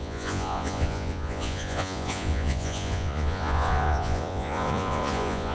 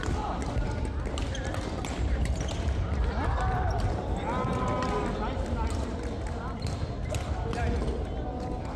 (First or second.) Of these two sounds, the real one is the second